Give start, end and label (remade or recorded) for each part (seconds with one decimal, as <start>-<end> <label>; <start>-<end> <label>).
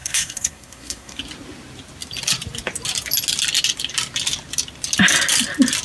0.0-1.2 remade; 1.2-5.8 recorded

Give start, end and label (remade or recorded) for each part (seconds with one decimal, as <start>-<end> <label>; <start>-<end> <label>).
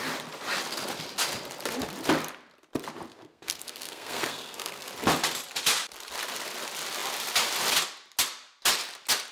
0.0-3.1 recorded; 3.1-4.9 remade; 4.9-9.3 recorded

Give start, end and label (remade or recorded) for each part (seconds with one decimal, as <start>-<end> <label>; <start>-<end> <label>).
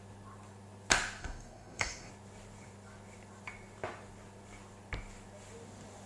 0.0-1.2 recorded; 1.2-2.1 remade; 2.1-6.1 recorded